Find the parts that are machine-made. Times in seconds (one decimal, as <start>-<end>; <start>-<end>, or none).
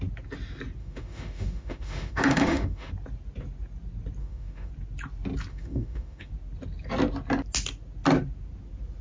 0.8-2.9; 4.2-4.7; 5.5-6.3